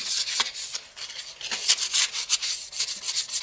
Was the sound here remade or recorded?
recorded